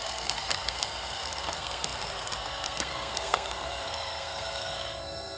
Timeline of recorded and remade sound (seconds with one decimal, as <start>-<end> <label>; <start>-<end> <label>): 0.0-5.4 remade